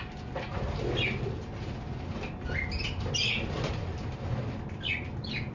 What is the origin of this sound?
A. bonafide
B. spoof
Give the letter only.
A